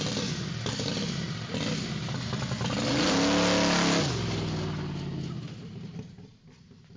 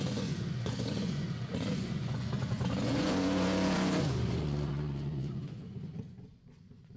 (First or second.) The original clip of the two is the first